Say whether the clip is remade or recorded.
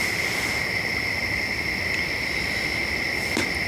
recorded